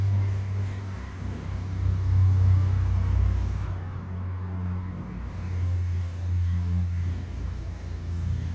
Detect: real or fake fake